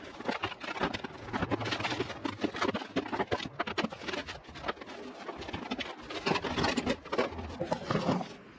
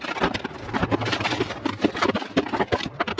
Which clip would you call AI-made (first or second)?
second